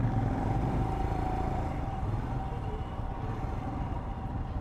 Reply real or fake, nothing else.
fake